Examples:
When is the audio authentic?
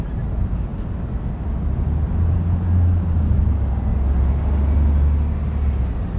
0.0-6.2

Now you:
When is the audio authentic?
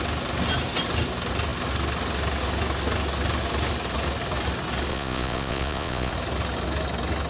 0.0-4.9; 6.1-7.3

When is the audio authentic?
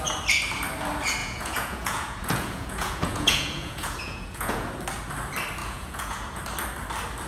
0.0-1.2; 4.7-5.6; 6.4-7.3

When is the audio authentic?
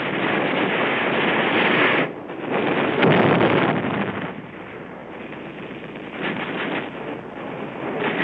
0.0-8.2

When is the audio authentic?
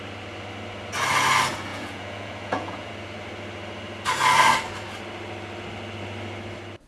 0.0-1.7; 2.9-6.9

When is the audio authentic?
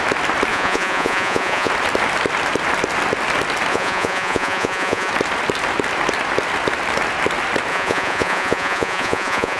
0.0-0.5; 1.7-3.7; 5.1-7.7